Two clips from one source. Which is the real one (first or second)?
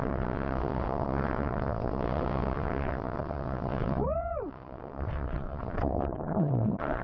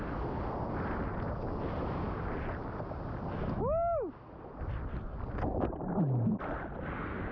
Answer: second